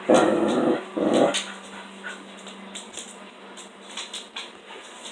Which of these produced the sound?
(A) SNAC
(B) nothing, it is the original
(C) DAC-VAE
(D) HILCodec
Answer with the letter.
B